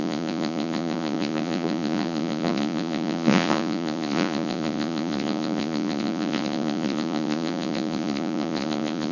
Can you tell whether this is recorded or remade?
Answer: remade